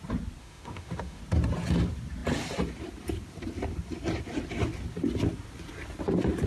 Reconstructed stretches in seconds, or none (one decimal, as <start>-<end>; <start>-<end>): 0.4-1.2